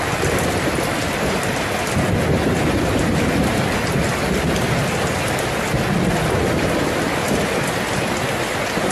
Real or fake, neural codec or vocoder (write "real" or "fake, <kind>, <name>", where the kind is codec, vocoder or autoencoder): real